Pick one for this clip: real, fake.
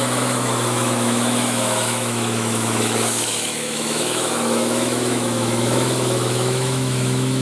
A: fake